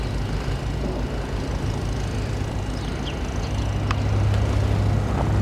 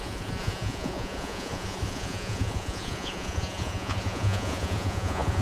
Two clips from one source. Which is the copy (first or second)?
second